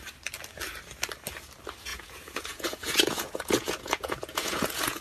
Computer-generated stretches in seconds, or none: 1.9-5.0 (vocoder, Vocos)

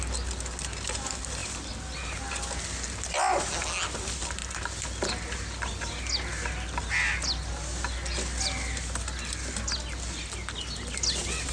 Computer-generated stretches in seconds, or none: none